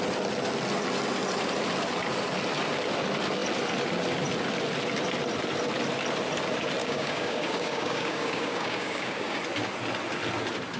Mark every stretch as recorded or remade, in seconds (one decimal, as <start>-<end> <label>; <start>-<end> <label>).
0.0-6.8 recorded; 6.8-9.4 remade; 9.4-10.8 recorded